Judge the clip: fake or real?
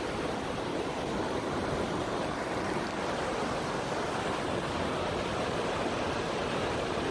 real